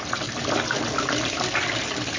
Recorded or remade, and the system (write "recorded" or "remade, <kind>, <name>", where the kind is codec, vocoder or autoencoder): recorded